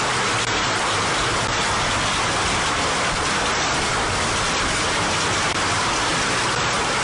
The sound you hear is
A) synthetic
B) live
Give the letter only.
B